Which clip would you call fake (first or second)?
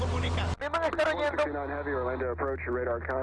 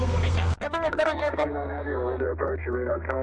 second